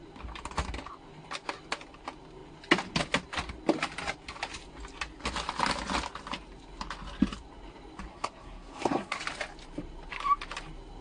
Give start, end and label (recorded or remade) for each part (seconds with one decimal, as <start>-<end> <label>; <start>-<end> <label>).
0.0-8.1 recorded; 8.1-9.2 remade; 9.2-11.0 recorded

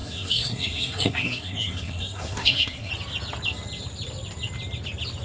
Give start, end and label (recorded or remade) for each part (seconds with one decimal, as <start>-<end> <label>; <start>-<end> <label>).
0.0-2.9 remade; 2.9-5.2 recorded

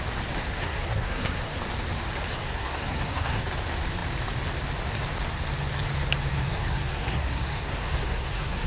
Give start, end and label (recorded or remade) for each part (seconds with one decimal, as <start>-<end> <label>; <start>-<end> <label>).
0.0-0.5 recorded; 0.5-1.6 remade; 1.6-2.3 recorded; 2.3-3.4 remade; 3.4-6.3 recorded; 6.3-8.7 remade

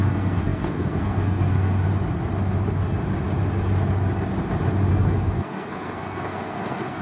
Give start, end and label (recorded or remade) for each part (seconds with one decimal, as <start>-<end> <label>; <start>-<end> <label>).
0.0-1.9 remade; 1.9-4.9 recorded; 4.9-7.0 remade

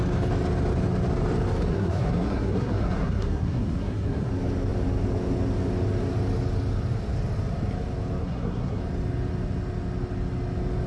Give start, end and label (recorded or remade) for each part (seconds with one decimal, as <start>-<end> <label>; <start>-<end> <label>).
0.0-1.7 recorded; 1.7-4.3 remade; 4.3-8.2 recorded; 8.2-8.8 remade; 8.8-10.9 recorded

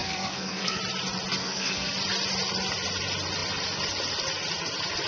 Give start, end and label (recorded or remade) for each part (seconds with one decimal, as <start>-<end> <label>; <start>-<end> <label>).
0.0-0.8 remade; 0.8-1.4 recorded; 1.4-1.9 remade; 1.9-5.1 recorded

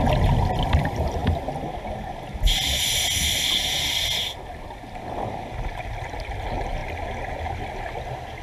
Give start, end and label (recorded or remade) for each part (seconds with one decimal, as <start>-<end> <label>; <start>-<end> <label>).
0.0-8.4 recorded

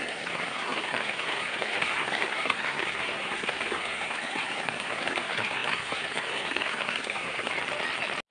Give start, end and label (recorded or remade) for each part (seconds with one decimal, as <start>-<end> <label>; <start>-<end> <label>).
0.0-7.5 remade; 7.5-8.3 recorded